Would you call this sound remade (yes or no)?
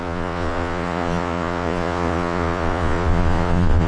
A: yes